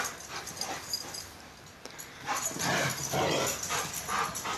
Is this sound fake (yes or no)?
no